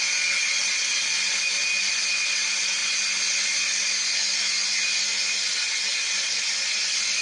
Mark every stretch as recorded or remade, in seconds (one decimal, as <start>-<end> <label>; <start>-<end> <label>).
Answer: 0.0-7.2 recorded